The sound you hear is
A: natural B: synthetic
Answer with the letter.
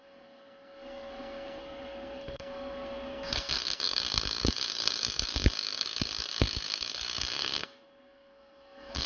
B